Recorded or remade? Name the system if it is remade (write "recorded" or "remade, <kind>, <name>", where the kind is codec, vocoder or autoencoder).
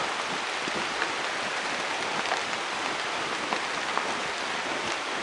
recorded